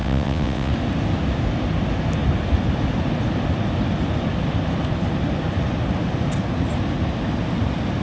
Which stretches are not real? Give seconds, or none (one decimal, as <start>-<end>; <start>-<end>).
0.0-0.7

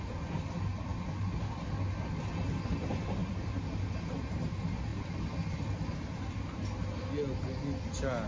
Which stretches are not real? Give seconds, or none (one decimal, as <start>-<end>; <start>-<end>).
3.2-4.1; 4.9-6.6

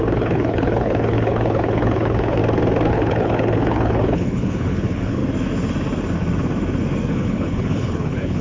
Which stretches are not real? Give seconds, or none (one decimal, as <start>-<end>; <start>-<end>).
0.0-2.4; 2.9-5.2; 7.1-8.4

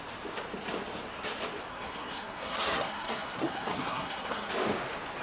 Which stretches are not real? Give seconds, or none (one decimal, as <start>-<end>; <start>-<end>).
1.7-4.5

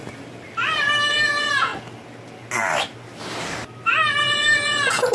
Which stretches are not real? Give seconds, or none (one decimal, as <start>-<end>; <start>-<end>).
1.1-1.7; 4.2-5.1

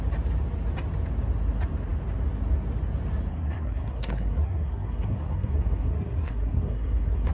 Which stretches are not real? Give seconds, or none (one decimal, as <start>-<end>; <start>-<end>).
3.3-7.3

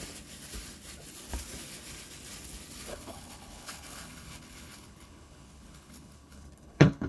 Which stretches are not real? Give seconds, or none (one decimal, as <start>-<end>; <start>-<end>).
2.9-7.1

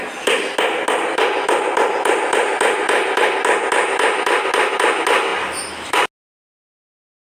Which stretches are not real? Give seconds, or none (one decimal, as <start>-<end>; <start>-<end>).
none